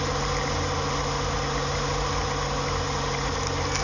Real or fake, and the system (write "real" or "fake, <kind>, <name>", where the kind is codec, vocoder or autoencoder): real